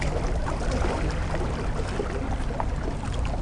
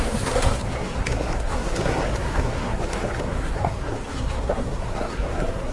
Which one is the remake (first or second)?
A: second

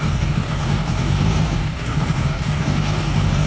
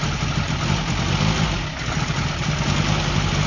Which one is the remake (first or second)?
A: first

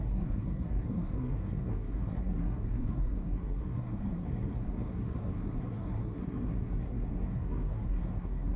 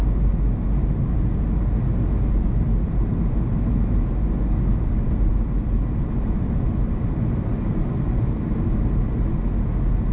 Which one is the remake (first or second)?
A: first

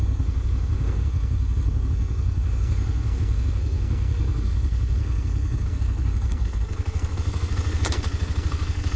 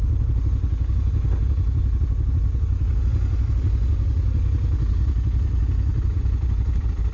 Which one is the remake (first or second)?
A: first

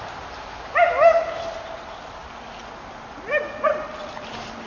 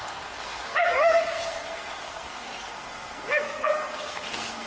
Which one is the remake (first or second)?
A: second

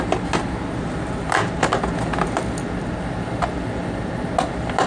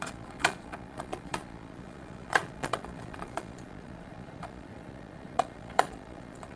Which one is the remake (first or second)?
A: second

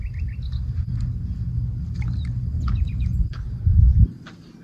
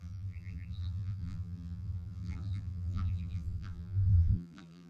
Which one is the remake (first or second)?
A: second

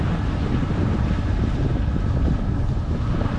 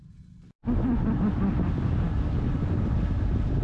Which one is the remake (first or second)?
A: first